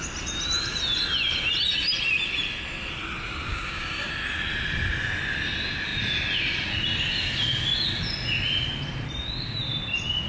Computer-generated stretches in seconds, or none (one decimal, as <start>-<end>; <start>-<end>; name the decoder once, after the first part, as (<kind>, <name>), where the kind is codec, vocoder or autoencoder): 3.5-4.1 (codec, DAC)